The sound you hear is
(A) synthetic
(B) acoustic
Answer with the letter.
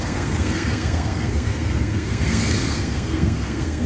A